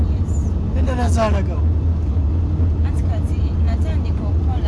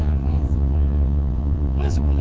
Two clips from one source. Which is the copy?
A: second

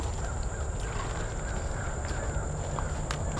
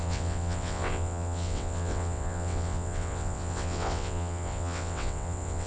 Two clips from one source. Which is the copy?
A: second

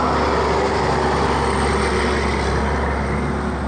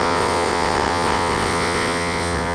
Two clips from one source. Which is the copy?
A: second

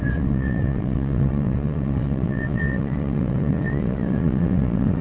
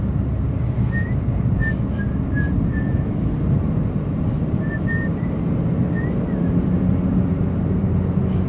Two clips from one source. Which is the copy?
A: first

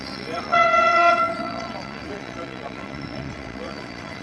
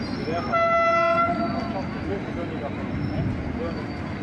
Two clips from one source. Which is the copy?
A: first